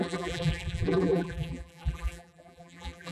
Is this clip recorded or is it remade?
remade